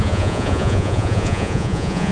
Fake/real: fake